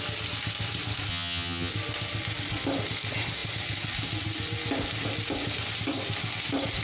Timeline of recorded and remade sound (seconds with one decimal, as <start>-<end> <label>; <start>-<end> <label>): 0.0-1.1 recorded; 1.1-1.7 remade; 1.7-6.8 recorded